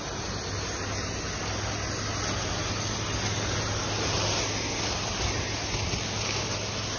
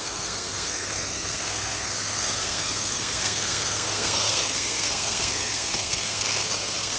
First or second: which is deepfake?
second